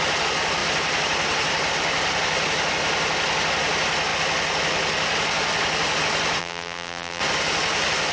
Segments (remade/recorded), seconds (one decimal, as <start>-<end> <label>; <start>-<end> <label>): 0.0-6.4 recorded; 6.4-7.2 remade; 7.2-8.1 recorded